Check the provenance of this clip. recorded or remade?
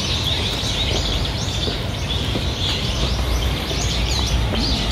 remade